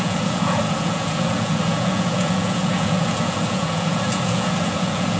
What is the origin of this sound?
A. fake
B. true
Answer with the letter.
A